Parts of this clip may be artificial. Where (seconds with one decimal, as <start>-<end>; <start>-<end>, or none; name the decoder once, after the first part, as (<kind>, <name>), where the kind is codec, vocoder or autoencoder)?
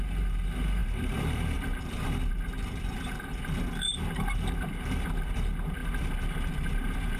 0.0-3.3 (vocoder, BigVGAN v2); 3.9-5.8; 6.5-7.2